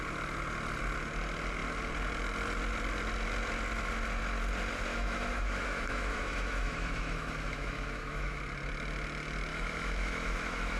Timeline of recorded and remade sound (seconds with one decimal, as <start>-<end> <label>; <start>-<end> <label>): 0.0-4.9 recorded; 4.9-8.4 remade; 8.4-9.5 recorded; 9.5-10.8 remade